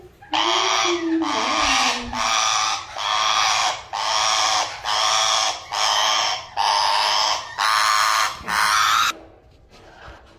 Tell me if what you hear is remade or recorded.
recorded